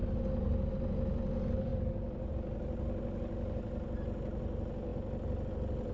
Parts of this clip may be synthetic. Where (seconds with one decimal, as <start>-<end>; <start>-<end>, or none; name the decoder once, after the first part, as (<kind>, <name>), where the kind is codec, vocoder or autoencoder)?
0.0-0.7 (vocoder, BigVGAN v2); 1.7-2.3